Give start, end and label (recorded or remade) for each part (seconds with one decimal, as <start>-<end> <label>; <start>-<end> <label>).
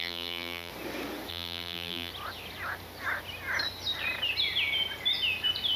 0.0-0.7 remade; 0.7-1.3 recorded; 1.3-2.1 remade; 2.1-5.8 recorded